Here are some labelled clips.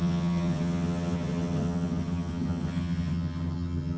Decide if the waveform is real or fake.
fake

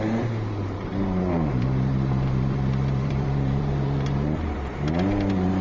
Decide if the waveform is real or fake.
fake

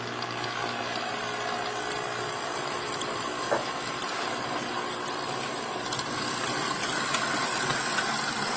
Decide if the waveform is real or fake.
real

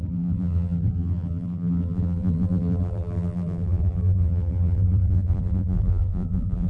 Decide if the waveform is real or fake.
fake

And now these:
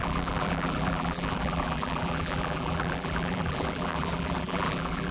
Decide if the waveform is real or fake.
fake